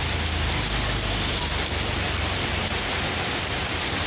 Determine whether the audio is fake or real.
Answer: real